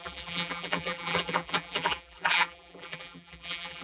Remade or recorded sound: remade